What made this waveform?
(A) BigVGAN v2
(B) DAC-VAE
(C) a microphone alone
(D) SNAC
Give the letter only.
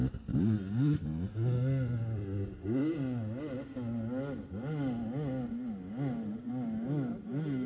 C